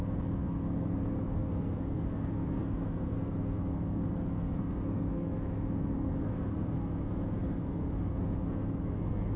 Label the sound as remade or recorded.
remade